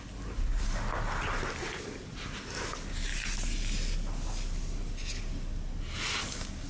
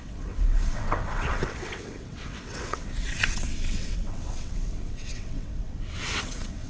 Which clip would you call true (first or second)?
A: first